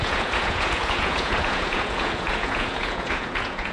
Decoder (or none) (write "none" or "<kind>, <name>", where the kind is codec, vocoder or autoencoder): vocoder, Vocos